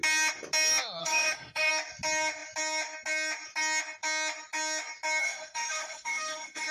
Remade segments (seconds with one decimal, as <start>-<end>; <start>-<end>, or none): 1.0-1.7; 5.2-6.7